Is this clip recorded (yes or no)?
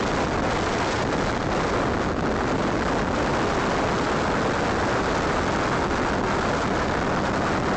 yes